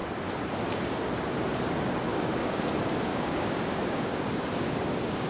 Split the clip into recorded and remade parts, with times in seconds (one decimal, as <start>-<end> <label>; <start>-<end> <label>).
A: 0.0-2.1 recorded; 2.1-2.6 remade; 2.6-3.1 recorded; 3.1-5.3 remade